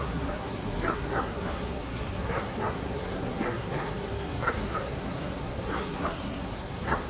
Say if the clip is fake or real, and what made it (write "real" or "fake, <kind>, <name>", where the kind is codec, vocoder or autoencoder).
fake, codec, SNAC